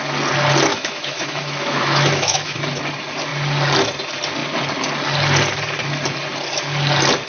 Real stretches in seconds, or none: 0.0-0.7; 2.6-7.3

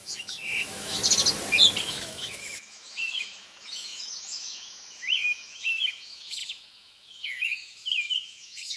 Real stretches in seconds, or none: 1.0-1.8